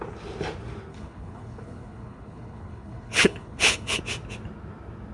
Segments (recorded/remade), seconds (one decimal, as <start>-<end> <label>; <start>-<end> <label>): 0.0-0.9 recorded; 0.9-4.0 remade; 4.0-5.1 recorded